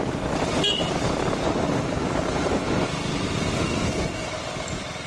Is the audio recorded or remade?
recorded